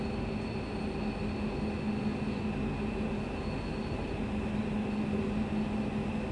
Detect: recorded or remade recorded